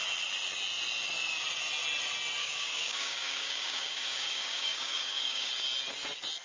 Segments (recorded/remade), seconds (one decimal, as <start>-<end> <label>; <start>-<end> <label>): 0.0-2.4 recorded; 2.4-5.5 remade; 5.5-6.4 recorded